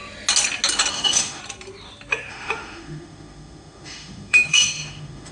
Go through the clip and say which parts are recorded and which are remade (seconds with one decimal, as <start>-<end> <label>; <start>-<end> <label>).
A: 0.0-0.9 recorded; 0.9-1.4 remade; 1.4-2.3 recorded; 2.3-5.3 remade